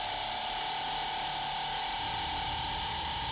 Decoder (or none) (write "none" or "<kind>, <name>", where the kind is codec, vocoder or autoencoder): none